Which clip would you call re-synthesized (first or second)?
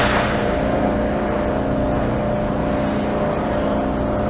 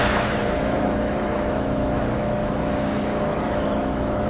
second